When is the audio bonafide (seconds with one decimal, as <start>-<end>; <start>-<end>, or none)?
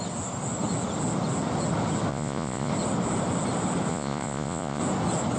0.0-2.1; 2.7-3.9; 4.8-5.4